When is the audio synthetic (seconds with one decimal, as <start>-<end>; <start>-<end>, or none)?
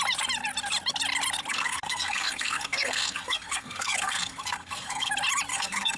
1.5-5.1; 5.5-6.0